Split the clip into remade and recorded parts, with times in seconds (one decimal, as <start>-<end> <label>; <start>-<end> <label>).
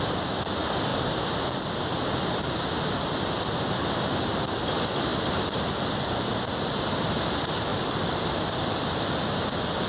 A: 0.0-0.9 recorded; 0.9-1.7 remade; 1.7-5.1 recorded; 5.1-6.8 remade; 6.8-7.7 recorded; 7.7-9.0 remade; 9.0-9.9 recorded